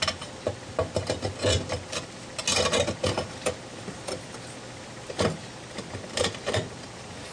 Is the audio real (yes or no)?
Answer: yes